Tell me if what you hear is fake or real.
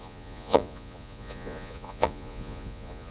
fake